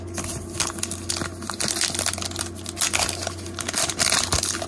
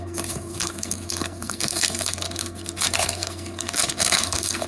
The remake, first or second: second